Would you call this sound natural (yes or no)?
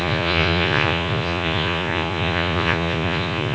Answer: no